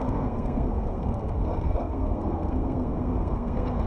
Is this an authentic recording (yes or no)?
no